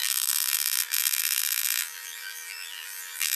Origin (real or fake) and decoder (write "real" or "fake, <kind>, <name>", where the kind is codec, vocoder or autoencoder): fake, vocoder, BigVGAN v2